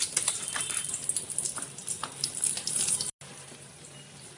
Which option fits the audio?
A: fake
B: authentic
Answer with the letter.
B